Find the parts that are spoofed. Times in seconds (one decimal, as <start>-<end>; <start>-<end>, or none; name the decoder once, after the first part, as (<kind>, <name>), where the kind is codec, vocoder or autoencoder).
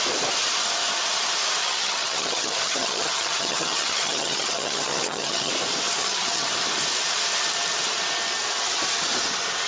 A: 1.6-5.5 (vocoder, HiFi-GAN); 6.0-6.5